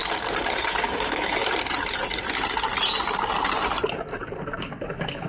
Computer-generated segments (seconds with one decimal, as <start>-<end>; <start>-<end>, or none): 0.9-1.4; 4.6-5.3